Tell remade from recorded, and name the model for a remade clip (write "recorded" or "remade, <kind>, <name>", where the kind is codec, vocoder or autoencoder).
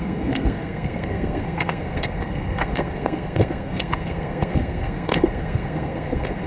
remade, codec, SNAC